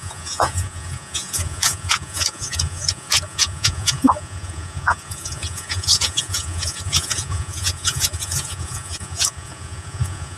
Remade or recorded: remade